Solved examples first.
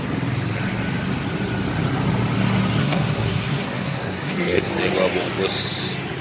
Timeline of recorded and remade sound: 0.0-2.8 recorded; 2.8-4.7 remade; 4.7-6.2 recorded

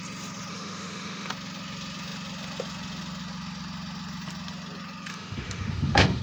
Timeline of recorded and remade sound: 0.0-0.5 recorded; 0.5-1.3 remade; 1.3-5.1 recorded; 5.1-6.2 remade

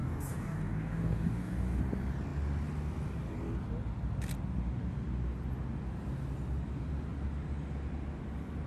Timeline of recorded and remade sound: 0.0-1.8 remade; 1.8-8.7 recorded

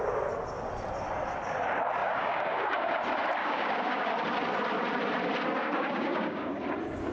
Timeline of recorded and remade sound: 0.0-2.0 recorded; 2.0-3.0 remade; 3.0-3.4 recorded; 3.4-4.1 remade; 4.1-5.6 recorded; 5.6-6.6 remade; 6.6-7.1 recorded

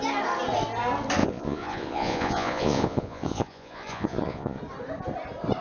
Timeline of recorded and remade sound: 0.0-1.2 recorded; 1.2-4.6 remade; 4.6-5.6 recorded

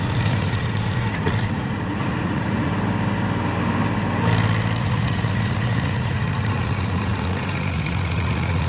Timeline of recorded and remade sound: 0.0-2.7 remade; 2.7-4.8 recorded; 4.8-8.7 remade